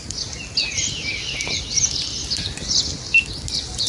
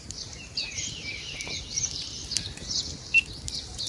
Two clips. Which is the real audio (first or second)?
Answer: first